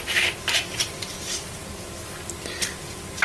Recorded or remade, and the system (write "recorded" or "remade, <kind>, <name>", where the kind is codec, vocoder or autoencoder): recorded